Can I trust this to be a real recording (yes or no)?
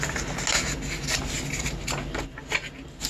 yes